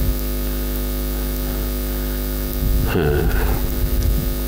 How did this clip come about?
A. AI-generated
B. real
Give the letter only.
B